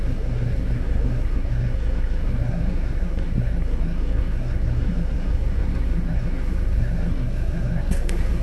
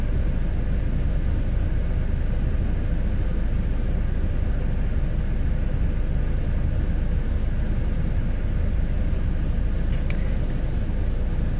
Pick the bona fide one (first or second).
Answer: second